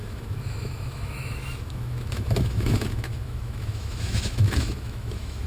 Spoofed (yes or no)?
yes